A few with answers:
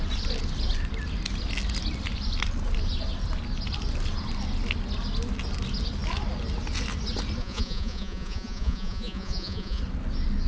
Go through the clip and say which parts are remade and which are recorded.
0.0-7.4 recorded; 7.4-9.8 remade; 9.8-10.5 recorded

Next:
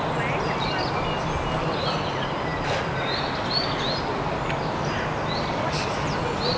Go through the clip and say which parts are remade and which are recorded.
0.0-6.6 recorded

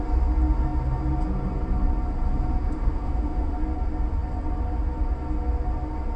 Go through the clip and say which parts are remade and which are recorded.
0.0-2.5 recorded; 2.5-3.5 remade; 3.5-6.2 recorded

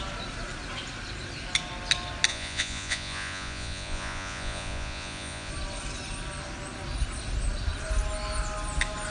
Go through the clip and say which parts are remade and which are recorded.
0.0-2.3 recorded; 2.3-5.5 remade; 5.5-9.1 recorded